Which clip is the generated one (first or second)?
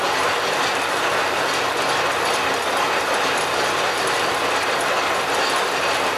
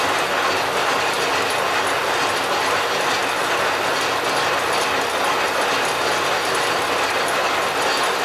first